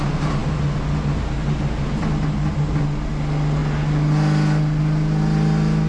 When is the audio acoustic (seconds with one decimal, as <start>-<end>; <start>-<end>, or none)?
0.0-5.9